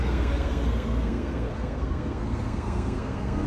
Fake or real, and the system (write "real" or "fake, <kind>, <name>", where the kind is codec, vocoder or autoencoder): fake, codec, SNAC